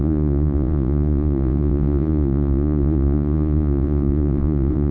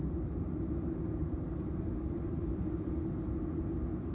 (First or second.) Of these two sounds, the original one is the second